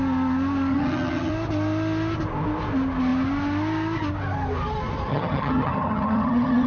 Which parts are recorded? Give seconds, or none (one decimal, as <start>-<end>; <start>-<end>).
0.0-0.7; 1.3-5.1